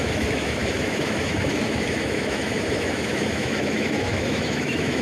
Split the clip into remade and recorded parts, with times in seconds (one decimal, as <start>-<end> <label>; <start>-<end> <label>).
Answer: 0.0-5.0 remade